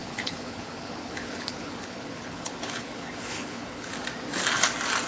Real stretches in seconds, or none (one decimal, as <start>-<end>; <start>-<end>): 3.9-5.1